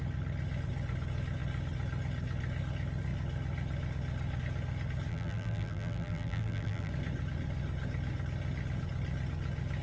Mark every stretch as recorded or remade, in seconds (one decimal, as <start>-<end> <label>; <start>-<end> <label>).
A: 0.0-5.1 recorded; 5.1-6.9 remade; 6.9-9.8 recorded